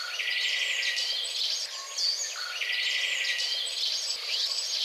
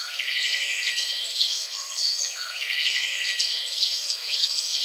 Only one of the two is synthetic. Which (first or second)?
second